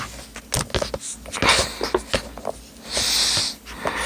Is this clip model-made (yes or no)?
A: no